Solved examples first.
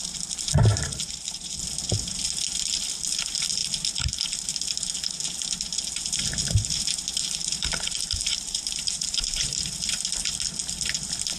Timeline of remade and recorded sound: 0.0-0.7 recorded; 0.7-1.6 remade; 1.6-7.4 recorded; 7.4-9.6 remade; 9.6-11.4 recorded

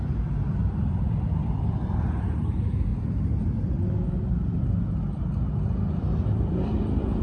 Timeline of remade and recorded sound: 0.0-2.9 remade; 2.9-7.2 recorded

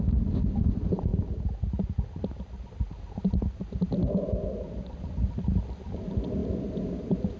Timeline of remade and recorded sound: 0.0-7.4 recorded

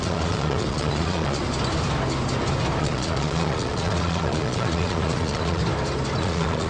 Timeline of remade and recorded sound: 0.0-1.4 remade; 1.4-2.8 recorded; 2.8-5.6 remade; 5.6-6.2 recorded; 6.2-6.7 remade

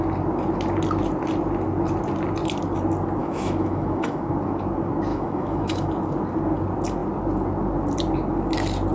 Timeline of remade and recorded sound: 0.0-3.2 recorded; 3.2-4.3 remade; 4.3-5.1 recorded; 5.1-5.9 remade; 5.9-8.9 recorded

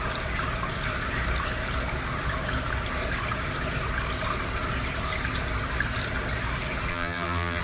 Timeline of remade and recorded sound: 0.0-6.9 recorded; 6.9-7.6 remade